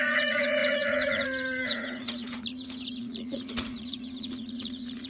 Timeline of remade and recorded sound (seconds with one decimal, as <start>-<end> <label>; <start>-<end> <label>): 0.0-5.1 remade